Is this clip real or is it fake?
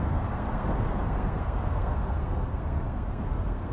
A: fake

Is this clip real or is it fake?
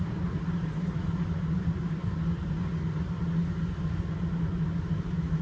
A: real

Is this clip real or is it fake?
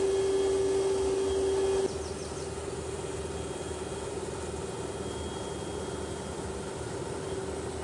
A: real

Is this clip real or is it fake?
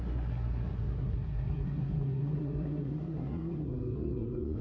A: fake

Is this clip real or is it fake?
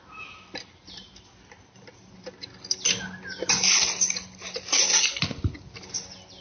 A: real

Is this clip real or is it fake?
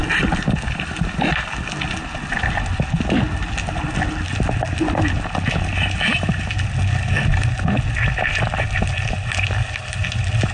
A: real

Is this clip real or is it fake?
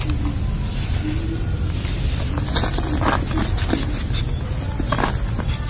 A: real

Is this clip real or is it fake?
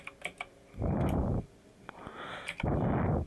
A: real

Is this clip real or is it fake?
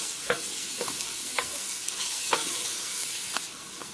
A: fake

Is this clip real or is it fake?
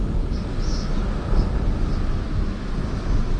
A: real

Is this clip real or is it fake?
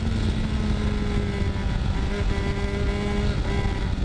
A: real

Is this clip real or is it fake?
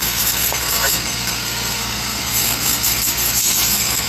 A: fake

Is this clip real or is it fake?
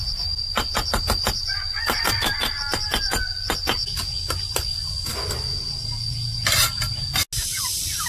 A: real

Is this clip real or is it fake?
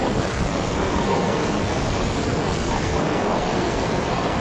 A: fake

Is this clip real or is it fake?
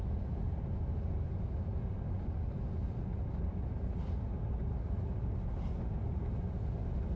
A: real